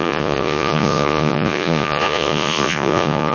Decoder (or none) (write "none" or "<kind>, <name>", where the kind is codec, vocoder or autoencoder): vocoder, Vocos